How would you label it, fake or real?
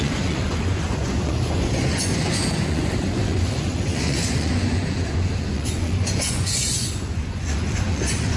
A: fake